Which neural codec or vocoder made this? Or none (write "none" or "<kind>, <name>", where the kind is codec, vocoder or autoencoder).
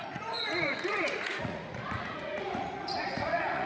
vocoder, Vocos